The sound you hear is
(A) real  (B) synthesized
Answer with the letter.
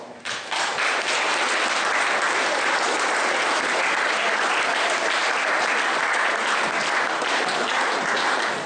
B